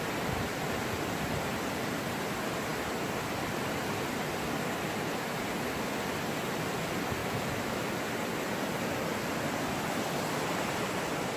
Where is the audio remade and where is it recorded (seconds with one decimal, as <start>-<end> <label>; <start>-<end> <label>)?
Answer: 0.0-7.2 recorded; 7.2-7.9 remade; 7.9-11.4 recorded